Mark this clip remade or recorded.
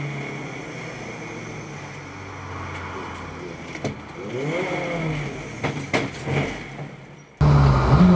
recorded